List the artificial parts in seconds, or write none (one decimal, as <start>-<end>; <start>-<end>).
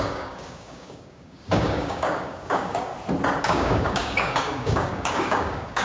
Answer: 0.0-2.9; 3.4-5.8